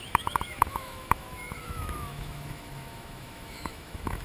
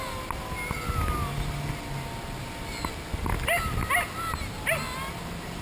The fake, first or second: first